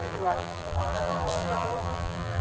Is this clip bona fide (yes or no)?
no